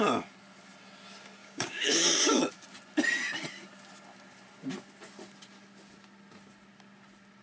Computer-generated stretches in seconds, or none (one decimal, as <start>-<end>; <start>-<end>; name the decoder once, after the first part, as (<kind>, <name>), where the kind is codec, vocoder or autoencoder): 1.4-2.4 (codec, DAC)